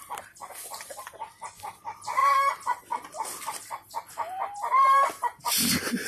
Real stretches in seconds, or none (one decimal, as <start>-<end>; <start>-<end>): none

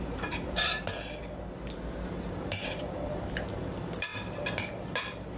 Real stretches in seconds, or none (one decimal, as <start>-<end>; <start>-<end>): 0.7-2.4

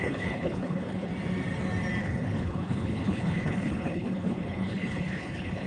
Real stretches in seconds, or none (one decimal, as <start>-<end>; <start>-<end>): 1.1-2.0

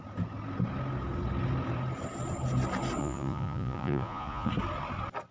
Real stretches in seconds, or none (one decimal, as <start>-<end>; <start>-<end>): 0.0-3.0; 4.5-5.3

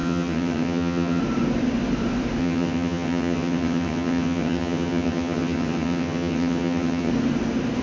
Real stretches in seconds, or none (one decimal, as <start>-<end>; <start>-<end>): 1.2-2.4; 7.1-7.8

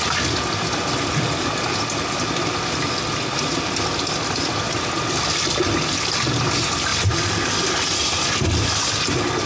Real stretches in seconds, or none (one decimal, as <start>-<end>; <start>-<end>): 0.0-9.5

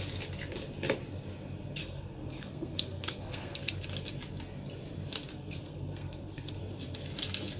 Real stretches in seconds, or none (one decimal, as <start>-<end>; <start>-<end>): 0.0-1.8; 3.7-5.3; 6.6-7.6

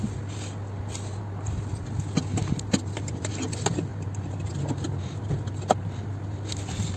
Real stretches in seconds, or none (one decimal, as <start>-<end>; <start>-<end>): 0.0-7.0